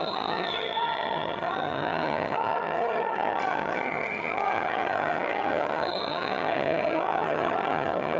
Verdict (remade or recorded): remade